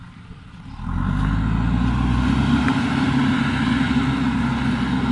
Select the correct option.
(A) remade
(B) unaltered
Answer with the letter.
B